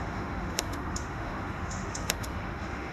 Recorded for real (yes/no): no